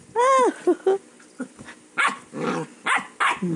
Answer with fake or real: real